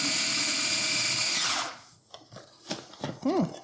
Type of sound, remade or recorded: remade